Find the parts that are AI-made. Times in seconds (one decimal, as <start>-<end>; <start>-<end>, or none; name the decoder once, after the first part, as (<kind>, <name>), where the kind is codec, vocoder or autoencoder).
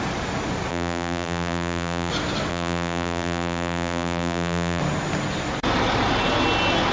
0.7-2.1 (vocoder, BigVGAN v2); 2.5-4.8